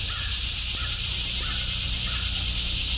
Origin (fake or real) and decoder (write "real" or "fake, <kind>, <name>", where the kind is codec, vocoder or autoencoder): real